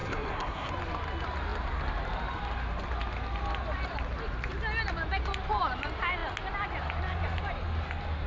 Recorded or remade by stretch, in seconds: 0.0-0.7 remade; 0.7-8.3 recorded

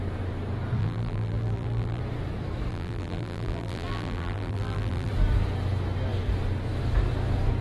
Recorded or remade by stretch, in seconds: 0.0-0.8 recorded; 0.8-2.0 remade; 2.0-2.7 recorded; 2.7-5.1 remade; 5.1-7.6 recorded

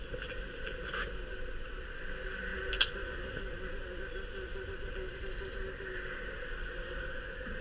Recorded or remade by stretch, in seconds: 0.0-7.6 recorded

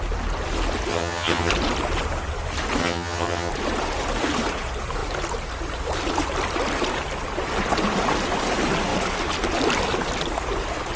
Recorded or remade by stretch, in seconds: 0.0-0.9 recorded; 0.9-1.5 remade; 1.5-2.8 recorded; 2.8-3.5 remade; 3.5-11.0 recorded

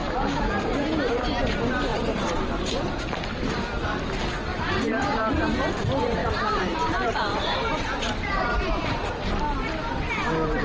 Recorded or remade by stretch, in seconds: 0.0-1.1 remade; 1.1-1.9 recorded; 1.9-3.6 remade; 3.6-4.5 recorded; 4.5-5.3 remade; 5.3-6.2 recorded; 6.2-10.6 remade